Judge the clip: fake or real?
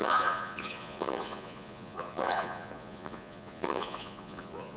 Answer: fake